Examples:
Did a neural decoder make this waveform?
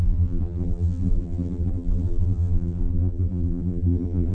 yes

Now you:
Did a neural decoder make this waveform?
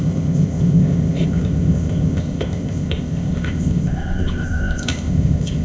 yes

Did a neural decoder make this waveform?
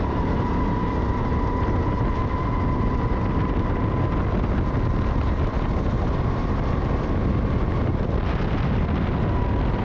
no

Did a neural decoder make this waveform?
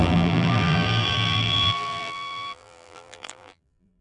yes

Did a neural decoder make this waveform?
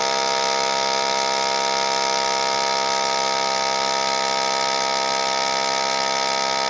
no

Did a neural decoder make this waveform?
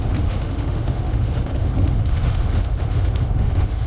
yes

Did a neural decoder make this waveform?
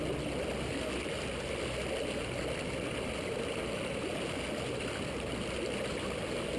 no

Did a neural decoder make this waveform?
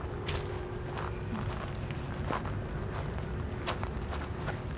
no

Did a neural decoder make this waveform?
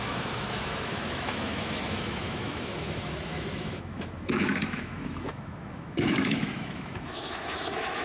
yes